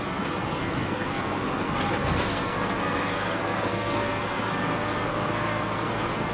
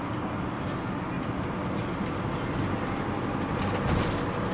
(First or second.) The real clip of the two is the second